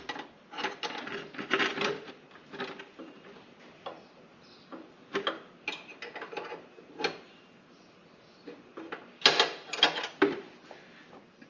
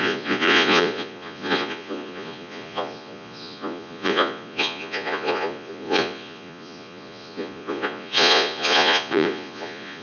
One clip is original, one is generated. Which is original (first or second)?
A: first